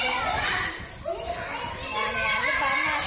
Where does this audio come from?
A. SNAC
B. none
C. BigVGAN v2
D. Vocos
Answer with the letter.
B